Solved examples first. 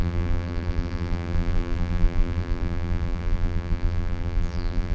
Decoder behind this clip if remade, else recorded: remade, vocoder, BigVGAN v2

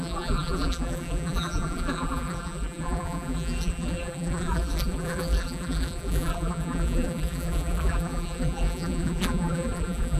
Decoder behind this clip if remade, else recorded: remade, vocoder, BigVGAN v2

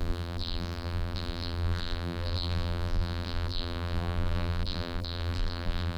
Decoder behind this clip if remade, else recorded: remade, vocoder, BigVGAN v2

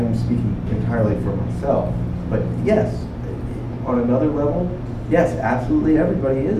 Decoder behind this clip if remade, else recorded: recorded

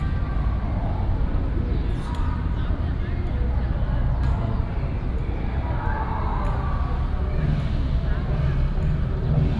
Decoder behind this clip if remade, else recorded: recorded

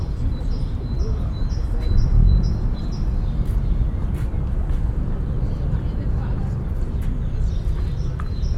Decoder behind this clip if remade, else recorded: remade, vocoder, BigVGAN v2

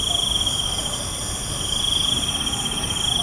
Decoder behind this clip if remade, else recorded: recorded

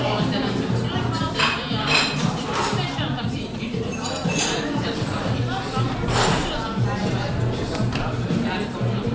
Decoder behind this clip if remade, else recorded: remade, vocoder, BigVGAN v2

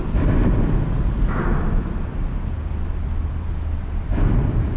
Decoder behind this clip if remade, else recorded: remade, vocoder, BigVGAN v2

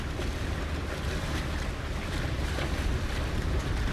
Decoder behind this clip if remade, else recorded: remade, vocoder, BigVGAN v2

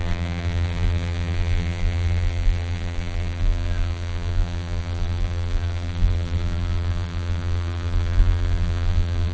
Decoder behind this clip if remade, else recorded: remade, vocoder, BigVGAN v2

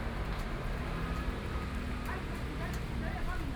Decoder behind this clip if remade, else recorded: recorded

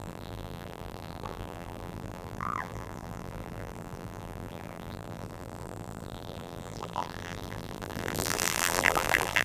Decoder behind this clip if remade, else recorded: remade, vocoder, BigVGAN v2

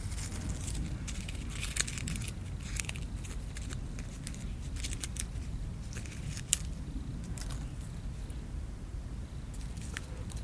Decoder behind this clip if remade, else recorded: recorded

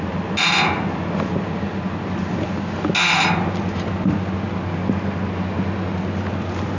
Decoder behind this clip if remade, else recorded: recorded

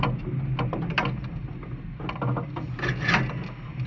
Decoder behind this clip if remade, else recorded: recorded